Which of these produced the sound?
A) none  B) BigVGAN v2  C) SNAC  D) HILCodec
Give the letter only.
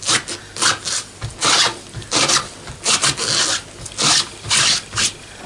A